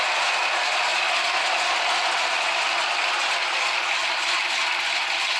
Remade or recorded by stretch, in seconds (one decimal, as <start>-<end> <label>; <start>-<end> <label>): 0.0-5.4 recorded